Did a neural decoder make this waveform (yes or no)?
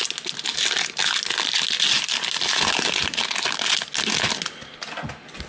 no